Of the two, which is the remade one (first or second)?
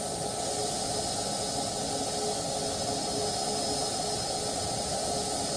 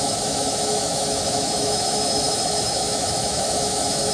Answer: second